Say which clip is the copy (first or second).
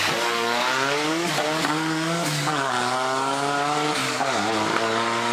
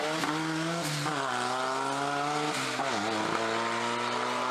first